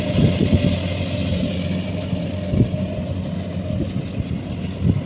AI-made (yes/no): no